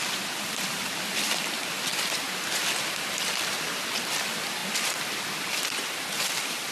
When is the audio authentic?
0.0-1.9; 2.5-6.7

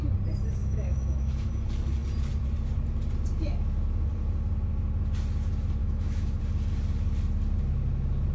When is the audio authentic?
0.0-0.6; 1.5-5.8; 6.4-8.3

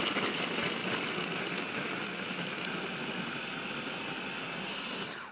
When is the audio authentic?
0.0-5.3

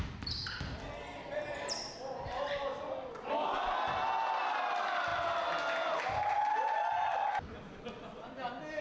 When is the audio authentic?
0.0-8.8

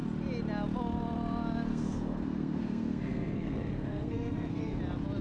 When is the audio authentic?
0.0-1.7; 4.8-5.2